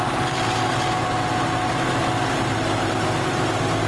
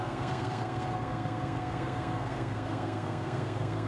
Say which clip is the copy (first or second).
second